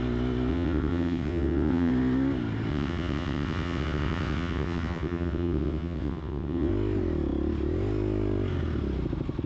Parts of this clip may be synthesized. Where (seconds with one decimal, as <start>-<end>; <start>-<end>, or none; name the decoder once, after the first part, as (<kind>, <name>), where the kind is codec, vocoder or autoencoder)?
0.5-1.9 (vocoder, WaveNeXt); 2.7-6.7